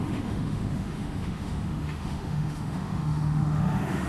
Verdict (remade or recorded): remade